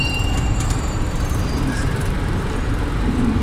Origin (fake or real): fake